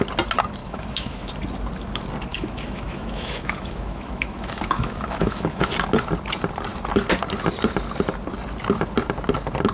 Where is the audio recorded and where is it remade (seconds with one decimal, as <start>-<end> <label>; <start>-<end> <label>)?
0.0-0.6 recorded; 0.6-1.3 remade; 1.3-2.3 recorded; 2.3-5.7 remade; 5.7-9.7 recorded